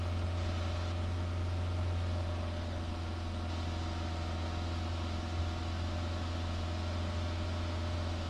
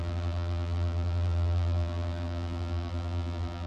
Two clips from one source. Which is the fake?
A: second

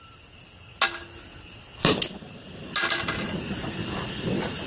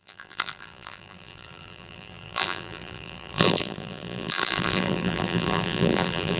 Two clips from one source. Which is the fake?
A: second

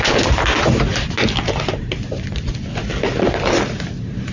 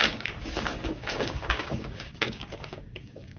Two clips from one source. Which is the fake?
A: second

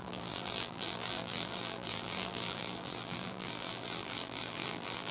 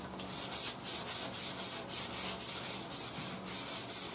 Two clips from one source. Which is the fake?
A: first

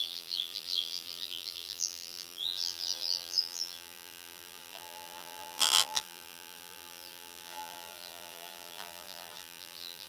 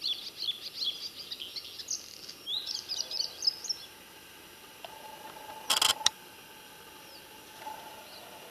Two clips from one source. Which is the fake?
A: first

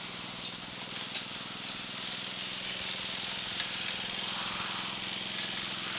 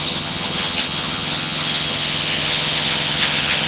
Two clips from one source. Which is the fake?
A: second